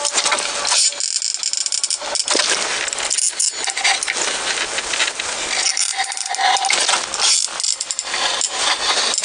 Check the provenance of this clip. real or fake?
real